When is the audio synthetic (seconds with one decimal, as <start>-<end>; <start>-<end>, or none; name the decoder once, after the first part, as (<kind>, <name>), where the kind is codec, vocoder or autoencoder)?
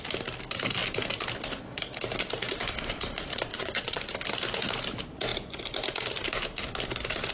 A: 3.5-4.0 (vocoder, WaveNeXt)